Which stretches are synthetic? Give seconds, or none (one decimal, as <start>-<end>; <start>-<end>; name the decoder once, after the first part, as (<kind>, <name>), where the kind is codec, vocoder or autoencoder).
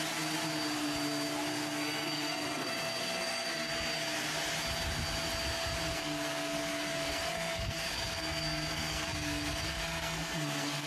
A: 1.5-3.7 (codec, SNAC); 5.9-10.9